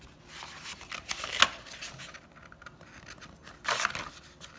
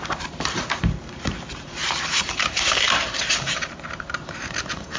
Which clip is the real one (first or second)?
first